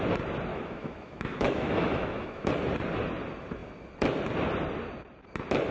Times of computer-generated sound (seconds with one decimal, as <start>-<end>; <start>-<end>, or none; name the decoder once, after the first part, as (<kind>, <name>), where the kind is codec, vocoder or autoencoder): 0.5-2.5 (autoencoder, DAC-VAE)